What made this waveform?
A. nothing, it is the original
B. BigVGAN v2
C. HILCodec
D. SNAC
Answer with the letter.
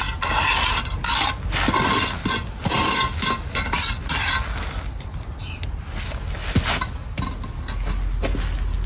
A